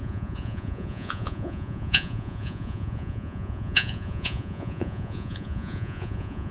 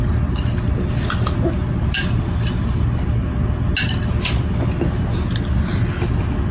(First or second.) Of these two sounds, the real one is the second